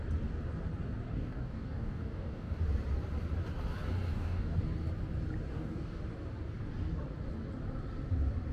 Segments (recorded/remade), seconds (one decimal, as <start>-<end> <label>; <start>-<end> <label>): 0.0-1.1 recorded; 1.1-2.6 remade; 2.6-4.1 recorded; 4.1-4.6 remade; 4.6-5.5 recorded; 5.5-6.0 remade; 6.0-8.5 recorded